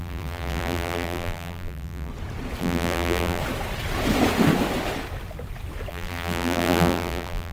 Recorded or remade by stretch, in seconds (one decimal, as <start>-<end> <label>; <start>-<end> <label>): 0.0-2.1 remade; 2.1-2.6 recorded; 2.6-3.4 remade; 3.4-5.9 recorded; 5.9-7.5 remade